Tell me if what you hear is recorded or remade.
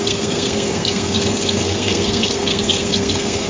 remade